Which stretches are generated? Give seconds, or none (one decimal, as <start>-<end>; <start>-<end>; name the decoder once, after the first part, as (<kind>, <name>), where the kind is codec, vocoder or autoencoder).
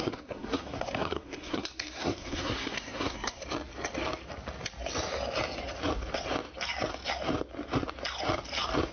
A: 0.0-3.4 (codec, SNAC)